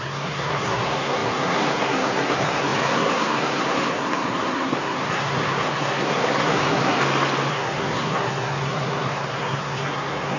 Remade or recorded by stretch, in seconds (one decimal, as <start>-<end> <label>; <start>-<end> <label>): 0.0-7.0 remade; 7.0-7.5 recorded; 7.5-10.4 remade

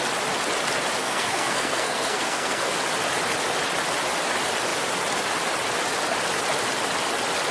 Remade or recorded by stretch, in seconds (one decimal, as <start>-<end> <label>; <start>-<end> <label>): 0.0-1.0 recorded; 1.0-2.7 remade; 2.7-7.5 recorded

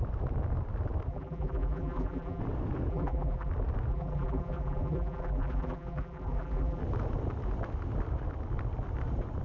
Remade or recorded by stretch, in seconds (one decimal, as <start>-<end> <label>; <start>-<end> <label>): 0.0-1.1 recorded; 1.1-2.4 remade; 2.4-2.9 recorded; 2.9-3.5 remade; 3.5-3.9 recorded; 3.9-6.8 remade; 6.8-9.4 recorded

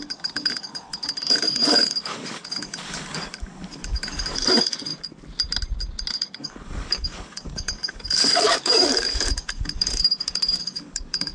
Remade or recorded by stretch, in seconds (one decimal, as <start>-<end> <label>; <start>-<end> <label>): 0.0-4.9 remade; 4.9-6.1 recorded; 6.1-11.3 remade

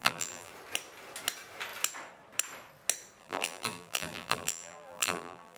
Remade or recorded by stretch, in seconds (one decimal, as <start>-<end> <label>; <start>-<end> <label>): 0.0-0.5 remade; 0.5-3.2 recorded; 3.2-5.6 remade

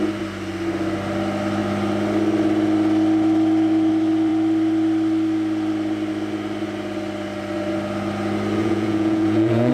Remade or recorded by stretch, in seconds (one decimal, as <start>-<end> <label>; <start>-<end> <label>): 0.0-8.6 recorded; 8.6-9.7 remade

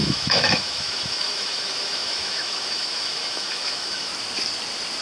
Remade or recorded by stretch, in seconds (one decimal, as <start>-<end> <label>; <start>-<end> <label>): 0.0-4.1 remade; 4.1-5.0 recorded

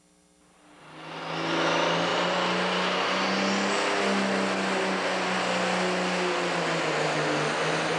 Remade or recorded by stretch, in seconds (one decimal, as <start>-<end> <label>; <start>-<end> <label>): 0.0-8.0 recorded